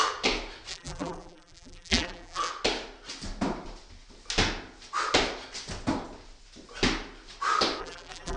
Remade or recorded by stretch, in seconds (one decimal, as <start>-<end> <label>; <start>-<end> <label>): 0.0-0.7 recorded; 0.7-2.5 remade; 2.5-7.8 recorded; 7.8-8.4 remade